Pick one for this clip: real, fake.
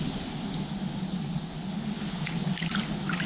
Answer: real